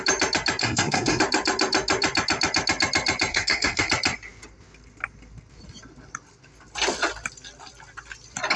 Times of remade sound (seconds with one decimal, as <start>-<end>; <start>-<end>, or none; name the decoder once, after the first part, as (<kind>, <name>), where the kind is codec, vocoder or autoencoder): 0.6-1.2 (codec, SNAC); 3.3-3.9